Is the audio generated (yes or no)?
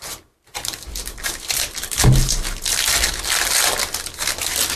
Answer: no